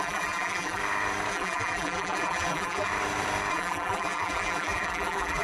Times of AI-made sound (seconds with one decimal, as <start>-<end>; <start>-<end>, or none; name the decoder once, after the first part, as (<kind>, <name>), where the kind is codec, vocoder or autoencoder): 0.0-0.8 (vocoder, BigVGAN v2); 1.3-2.9; 3.5-5.4